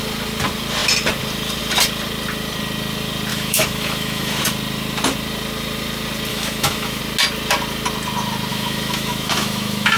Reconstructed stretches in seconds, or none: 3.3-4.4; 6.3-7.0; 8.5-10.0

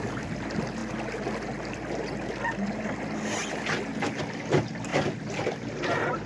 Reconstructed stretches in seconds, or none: none